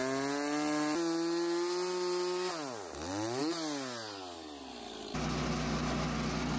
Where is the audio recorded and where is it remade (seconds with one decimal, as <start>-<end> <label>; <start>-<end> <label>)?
0.0-6.6 recorded

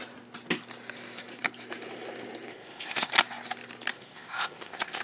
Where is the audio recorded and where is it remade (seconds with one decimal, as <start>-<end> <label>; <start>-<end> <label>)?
0.0-2.5 recorded; 2.5-3.1 remade; 3.1-3.9 recorded; 3.9-5.0 remade

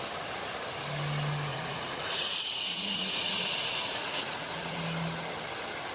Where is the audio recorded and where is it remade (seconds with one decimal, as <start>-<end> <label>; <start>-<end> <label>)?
0.0-1.5 recorded; 1.5-4.8 remade; 4.8-5.9 recorded

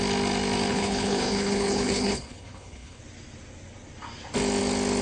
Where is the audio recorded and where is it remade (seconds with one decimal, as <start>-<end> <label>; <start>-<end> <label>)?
0.0-0.7 recorded; 0.7-3.0 remade; 3.0-5.0 recorded

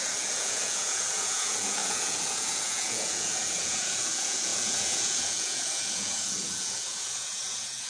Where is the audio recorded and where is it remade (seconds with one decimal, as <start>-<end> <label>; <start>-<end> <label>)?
0.0-7.9 remade

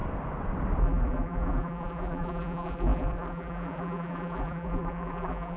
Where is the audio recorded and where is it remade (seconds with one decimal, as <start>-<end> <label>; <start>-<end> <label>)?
0.0-0.8 recorded; 0.8-5.6 remade

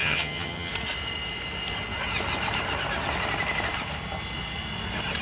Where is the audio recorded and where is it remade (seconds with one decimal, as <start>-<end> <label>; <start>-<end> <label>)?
0.0-0.7 remade; 0.7-5.2 recorded

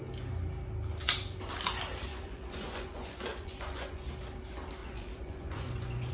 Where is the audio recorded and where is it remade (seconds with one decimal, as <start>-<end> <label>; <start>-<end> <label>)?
0.0-2.1 recorded; 2.1-4.1 remade; 4.1-4.8 recorded; 4.8-6.1 remade